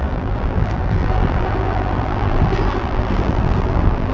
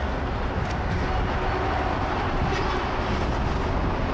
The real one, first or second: second